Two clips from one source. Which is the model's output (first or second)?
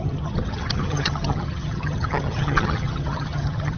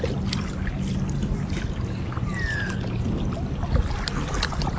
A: first